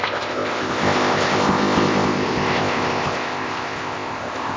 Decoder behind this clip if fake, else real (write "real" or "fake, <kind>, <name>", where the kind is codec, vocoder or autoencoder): fake, codec, ZipCodec